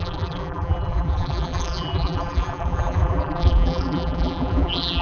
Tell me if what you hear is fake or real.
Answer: fake